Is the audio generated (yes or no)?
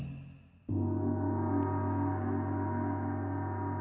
no